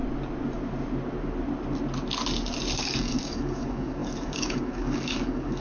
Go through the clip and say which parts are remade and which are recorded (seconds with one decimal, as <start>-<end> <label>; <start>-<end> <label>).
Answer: 0.0-2.8 recorded; 2.8-5.6 remade